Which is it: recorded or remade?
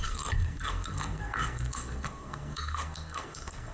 remade